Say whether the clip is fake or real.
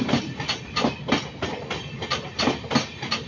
real